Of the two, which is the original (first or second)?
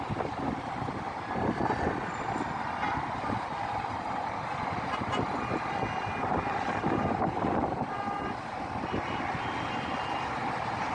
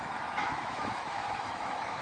first